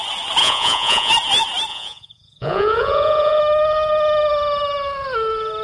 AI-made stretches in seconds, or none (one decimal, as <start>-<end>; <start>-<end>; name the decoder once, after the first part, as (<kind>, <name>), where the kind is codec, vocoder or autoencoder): 0.4-1.1 (vocoder, Vocos); 1.7-3.4